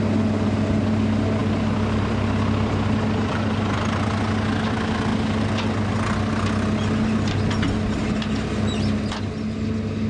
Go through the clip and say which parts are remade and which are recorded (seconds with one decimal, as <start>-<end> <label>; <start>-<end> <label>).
0.0-10.1 recorded